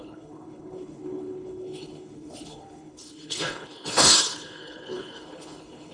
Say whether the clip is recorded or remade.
remade